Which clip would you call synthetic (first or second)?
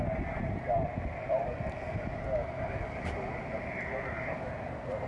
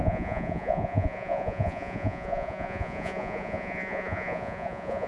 second